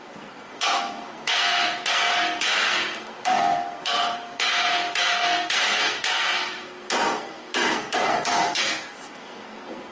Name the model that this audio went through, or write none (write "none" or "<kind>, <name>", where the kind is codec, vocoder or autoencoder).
codec, SNAC